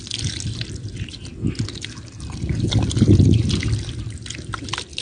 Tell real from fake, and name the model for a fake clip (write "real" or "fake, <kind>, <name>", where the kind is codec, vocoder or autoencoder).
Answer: real